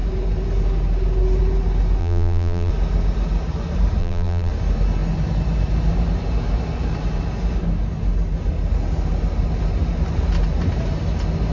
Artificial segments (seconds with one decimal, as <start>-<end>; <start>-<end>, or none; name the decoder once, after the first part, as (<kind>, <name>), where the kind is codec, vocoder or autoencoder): 2.0-2.7 (vocoder, BigVGAN v2); 4.0-4.5